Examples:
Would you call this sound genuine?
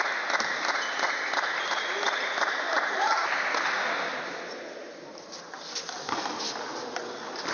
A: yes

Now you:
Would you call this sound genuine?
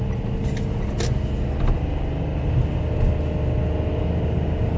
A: yes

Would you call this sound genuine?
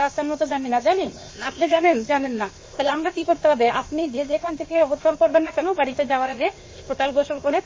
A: no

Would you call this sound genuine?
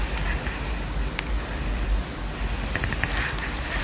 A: yes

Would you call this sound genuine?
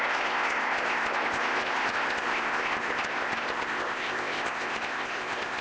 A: no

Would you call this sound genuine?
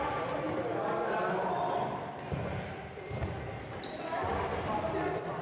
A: yes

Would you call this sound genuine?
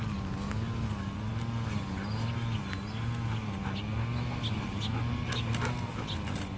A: yes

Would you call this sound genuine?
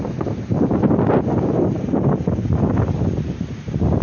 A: yes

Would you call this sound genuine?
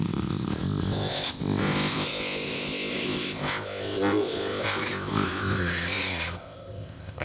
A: no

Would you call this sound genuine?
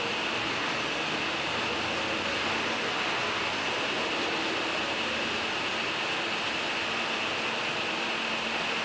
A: yes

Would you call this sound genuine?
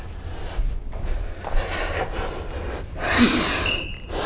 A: yes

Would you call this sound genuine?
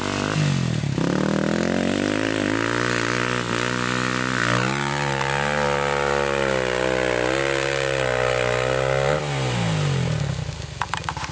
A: yes